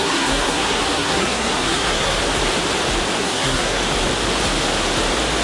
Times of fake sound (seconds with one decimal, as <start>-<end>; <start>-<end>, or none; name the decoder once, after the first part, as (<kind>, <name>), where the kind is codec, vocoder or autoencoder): 0.0-2.2 (codec, SNAC); 3.2-3.8